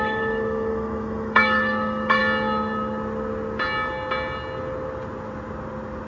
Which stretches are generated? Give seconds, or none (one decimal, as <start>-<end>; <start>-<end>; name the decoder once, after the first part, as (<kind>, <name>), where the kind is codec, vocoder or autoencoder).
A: 0.0-2.2 (autoencoder, DAC-VAE)